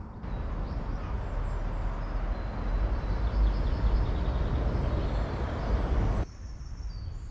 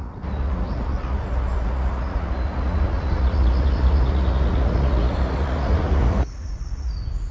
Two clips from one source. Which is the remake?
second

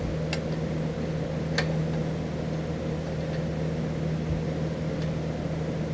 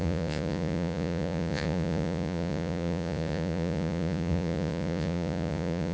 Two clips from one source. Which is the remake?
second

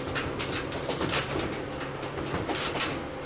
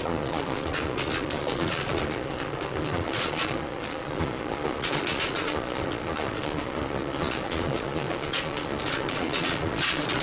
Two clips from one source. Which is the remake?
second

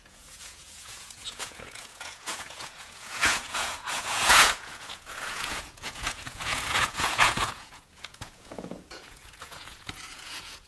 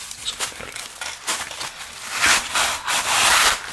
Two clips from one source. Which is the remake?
first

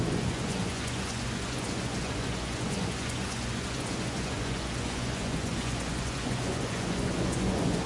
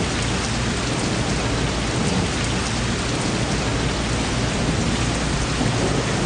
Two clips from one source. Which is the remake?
first